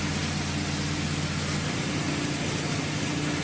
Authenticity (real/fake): real